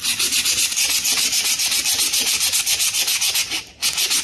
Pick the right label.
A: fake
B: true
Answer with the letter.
B